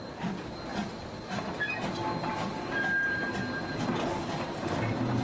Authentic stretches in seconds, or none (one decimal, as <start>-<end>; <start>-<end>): 0.7-3.8